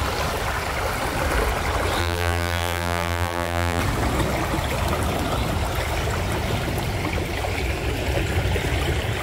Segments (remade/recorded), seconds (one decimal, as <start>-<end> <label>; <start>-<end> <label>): 0.0-2.0 recorded; 2.0-3.8 remade; 3.8-9.2 recorded